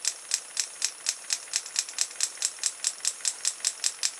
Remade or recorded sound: recorded